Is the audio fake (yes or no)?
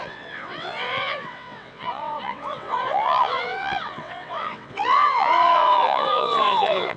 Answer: yes